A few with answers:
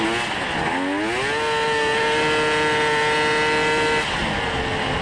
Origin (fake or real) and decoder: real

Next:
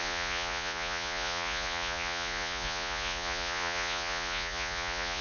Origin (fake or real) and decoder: fake, vocoder, Vocos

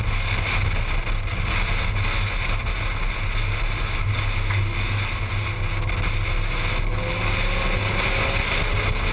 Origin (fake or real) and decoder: real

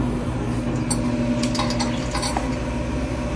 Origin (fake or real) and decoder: real